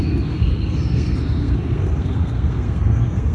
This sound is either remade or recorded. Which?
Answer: remade